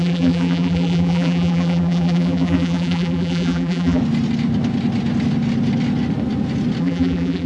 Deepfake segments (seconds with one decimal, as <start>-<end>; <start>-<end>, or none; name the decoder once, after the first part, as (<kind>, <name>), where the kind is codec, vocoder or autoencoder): 0.0-4.0 (vocoder, BigVGAN v2); 6.8-7.5